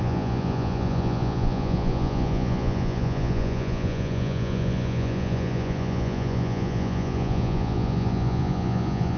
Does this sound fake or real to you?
fake